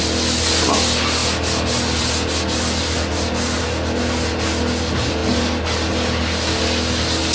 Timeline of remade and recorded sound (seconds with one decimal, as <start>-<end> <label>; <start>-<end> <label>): 0.0-7.3 recorded